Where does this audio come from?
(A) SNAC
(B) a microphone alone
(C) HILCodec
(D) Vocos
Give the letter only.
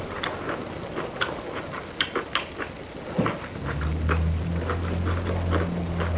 B